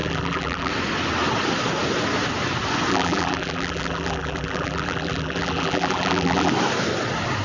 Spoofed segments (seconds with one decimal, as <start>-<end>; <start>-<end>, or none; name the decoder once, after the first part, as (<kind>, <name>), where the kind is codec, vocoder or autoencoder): 0.0-0.7 (vocoder, BigVGAN v2); 2.9-6.5